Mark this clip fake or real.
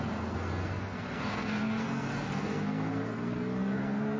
fake